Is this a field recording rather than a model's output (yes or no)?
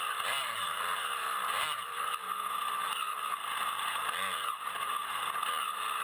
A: no